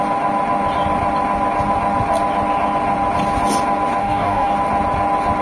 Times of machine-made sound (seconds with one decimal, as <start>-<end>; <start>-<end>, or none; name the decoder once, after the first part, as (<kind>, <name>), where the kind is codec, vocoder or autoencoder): 4.0-4.5 (codec, DAC)